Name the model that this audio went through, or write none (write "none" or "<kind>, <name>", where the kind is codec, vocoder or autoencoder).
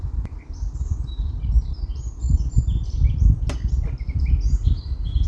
none